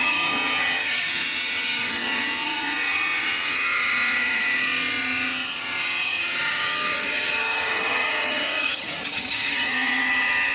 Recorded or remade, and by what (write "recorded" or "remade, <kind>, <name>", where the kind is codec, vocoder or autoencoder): remade, vocoder, HiFi-GAN